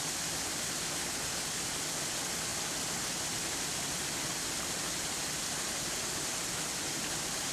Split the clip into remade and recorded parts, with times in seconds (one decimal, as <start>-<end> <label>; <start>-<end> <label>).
0.0-2.5 recorded; 2.5-7.0 remade; 7.0-7.5 recorded